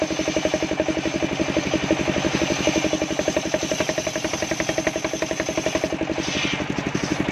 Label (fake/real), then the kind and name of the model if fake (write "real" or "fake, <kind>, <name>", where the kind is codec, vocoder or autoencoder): real